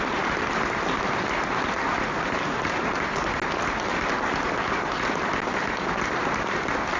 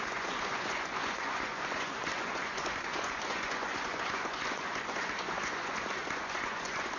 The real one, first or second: first